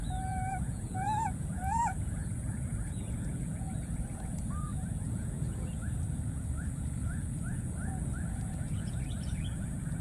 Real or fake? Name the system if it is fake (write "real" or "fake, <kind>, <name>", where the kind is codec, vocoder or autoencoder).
fake, vocoder, Vocos